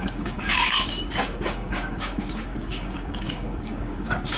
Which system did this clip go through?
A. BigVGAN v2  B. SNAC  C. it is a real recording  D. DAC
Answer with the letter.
D